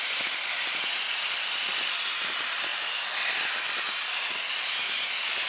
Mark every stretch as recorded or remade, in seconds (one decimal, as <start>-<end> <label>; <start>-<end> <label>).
0.0-5.5 recorded